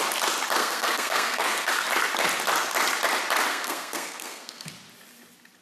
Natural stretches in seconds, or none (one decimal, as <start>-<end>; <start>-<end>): 0.0-0.6; 1.7-3.5; 4.7-5.6

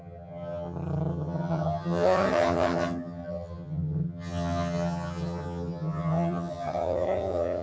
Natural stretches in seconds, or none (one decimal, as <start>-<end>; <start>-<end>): none

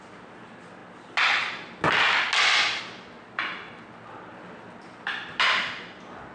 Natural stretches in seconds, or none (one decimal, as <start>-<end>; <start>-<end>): 0.0-6.3

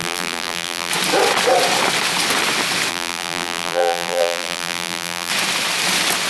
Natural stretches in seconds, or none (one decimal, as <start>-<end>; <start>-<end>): 0.9-2.9; 5.3-6.3

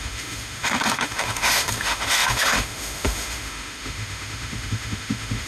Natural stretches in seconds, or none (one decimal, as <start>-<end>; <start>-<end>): none